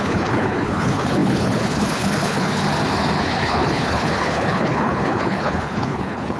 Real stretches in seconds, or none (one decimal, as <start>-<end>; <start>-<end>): 2.6-3.2